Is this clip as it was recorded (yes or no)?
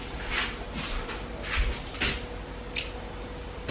yes